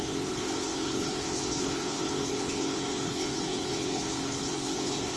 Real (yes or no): no